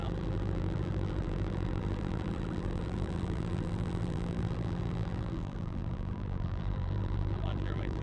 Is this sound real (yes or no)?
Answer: no